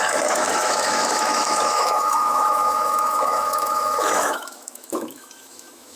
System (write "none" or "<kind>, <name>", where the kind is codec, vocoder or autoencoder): autoencoder, DAC-VAE